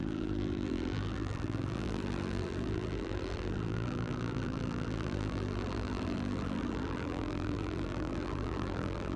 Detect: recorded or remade remade